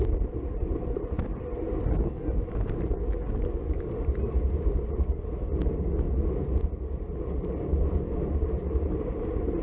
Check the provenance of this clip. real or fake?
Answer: real